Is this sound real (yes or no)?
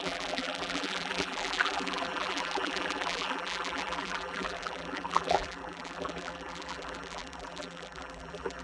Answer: no